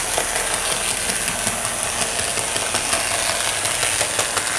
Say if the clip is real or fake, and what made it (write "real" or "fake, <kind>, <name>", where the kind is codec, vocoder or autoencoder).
real